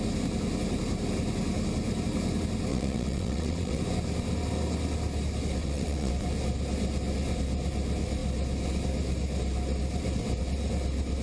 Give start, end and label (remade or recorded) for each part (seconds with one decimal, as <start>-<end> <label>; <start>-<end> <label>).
0.0-2.7 recorded; 2.7-3.8 remade; 3.8-5.6 recorded; 5.6-6.1 remade; 6.1-11.2 recorded